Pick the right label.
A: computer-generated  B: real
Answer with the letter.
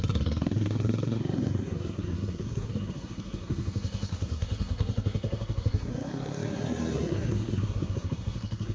A